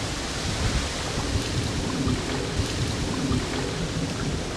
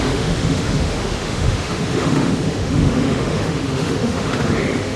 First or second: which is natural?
first